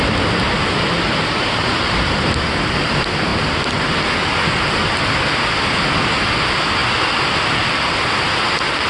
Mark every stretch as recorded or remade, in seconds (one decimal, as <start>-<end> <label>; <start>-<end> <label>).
0.0-8.9 recorded